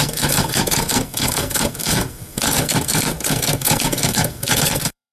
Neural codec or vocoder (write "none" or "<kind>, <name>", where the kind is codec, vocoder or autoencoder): codec, SNAC